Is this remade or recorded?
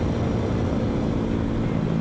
recorded